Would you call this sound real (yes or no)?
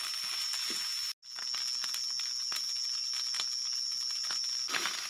yes